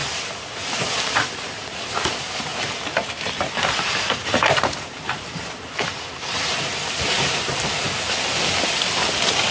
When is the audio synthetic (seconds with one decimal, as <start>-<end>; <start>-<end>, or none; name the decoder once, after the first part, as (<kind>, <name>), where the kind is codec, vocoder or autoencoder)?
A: 1.6-2.5 (vocoder, BigVGAN v2); 3.4-7.7